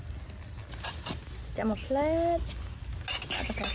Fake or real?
real